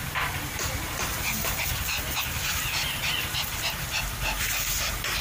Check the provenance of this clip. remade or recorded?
recorded